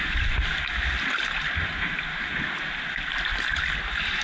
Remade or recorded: recorded